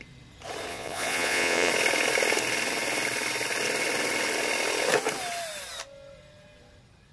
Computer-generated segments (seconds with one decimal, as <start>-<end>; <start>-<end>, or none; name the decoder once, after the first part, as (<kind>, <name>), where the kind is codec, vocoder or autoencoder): 0.7-1.7 (vocoder, Vocos)